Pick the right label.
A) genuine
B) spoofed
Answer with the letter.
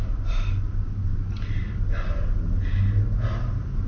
A